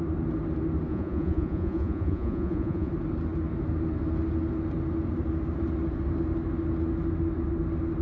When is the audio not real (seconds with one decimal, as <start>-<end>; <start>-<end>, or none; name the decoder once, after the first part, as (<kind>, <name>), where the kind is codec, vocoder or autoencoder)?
0.9-2.9 (vocoder, Vocos)